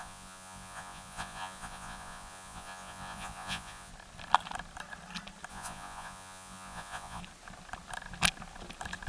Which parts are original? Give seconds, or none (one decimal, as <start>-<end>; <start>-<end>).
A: 3.9-5.5; 7.2-9.1